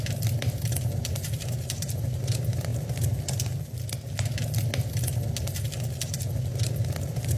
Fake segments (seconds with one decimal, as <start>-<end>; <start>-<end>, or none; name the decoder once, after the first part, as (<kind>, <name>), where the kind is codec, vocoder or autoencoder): 0.0-2.7 (vocoder, BigVGAN v2); 7.0-7.4